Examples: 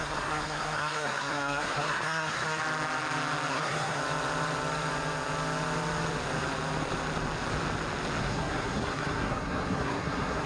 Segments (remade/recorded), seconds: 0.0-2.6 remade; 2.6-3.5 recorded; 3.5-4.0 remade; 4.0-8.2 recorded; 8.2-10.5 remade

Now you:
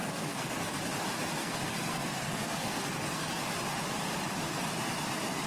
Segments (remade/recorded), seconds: 0.0-0.8 remade; 0.8-1.4 recorded; 1.4-3.4 remade; 3.4-5.5 recorded

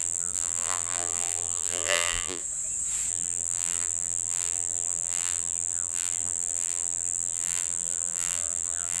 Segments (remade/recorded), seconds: 0.0-2.4 remade; 2.4-3.1 recorded; 3.1-9.0 remade